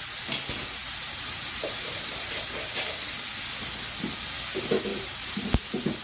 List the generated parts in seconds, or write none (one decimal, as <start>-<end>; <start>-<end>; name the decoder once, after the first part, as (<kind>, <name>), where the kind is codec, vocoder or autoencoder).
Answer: 0.8-2.4 (vocoder, BigVGAN v2); 4.9-5.6

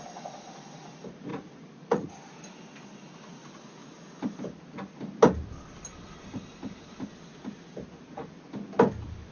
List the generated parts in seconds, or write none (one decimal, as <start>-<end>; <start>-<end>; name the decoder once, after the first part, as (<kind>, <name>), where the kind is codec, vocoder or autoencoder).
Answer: 1.3-2.1 (vocoder, Vocos)